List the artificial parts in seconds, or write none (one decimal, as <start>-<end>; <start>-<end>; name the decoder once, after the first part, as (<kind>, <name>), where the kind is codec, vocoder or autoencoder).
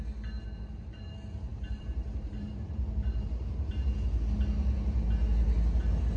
1.5-3.7 (vocoder, BigVGAN v2)